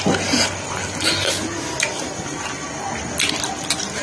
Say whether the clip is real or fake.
real